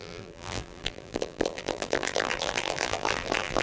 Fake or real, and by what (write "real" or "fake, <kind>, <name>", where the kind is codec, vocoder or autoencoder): fake, vocoder, BigVGAN v2